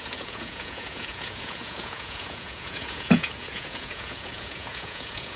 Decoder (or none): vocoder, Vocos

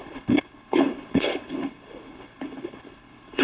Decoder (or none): codec, HILCodec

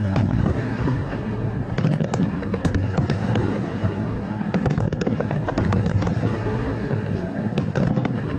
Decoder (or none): codec, SNAC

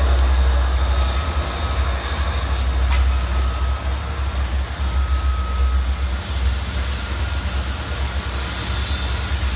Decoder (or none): none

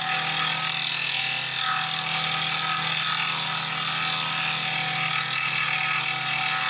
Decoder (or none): none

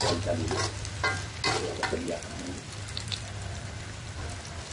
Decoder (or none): none